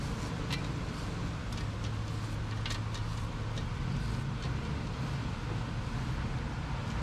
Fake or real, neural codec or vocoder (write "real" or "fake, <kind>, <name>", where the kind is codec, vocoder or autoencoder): real